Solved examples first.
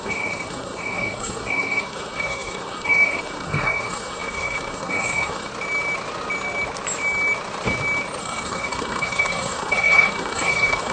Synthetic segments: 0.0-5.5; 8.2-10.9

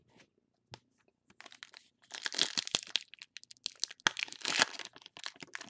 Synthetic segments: none

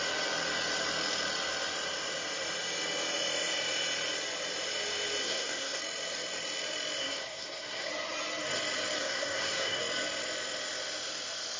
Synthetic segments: 5.2-5.8; 7.0-7.9; 9.0-9.8

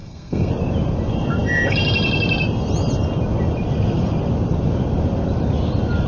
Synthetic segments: 0.0-0.5

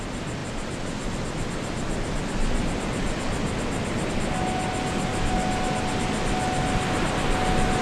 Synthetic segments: none

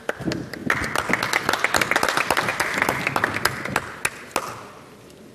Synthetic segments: none

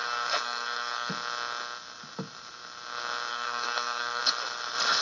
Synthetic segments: 0.0-1.1; 3.3-4.2